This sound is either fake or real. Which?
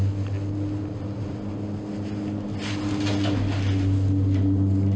real